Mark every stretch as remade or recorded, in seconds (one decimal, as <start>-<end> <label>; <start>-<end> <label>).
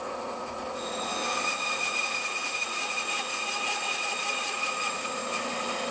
0.0-1.1 remade; 1.1-1.7 recorded; 1.7-5.2 remade; 5.2-5.9 recorded